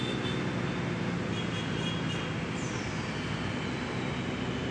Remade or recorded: recorded